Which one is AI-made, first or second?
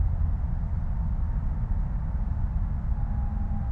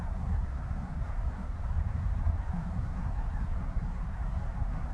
second